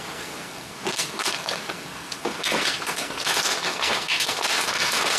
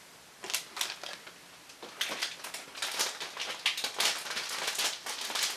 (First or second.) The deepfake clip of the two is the first